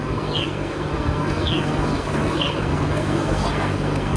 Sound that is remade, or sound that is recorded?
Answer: remade